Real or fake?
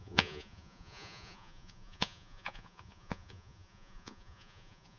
fake